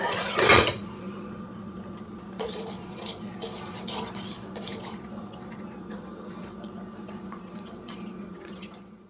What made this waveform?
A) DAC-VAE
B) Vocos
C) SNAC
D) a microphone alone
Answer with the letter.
B